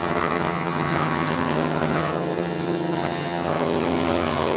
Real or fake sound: fake